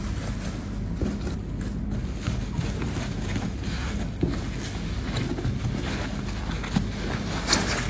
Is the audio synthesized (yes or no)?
no